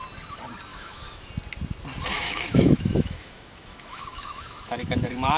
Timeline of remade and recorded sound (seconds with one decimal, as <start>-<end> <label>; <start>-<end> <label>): 0.0-0.7 recorded; 0.7-1.3 remade; 1.3-2.1 recorded; 2.1-5.4 remade